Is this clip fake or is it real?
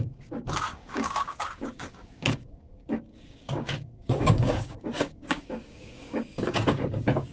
fake